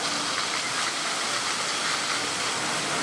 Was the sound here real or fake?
real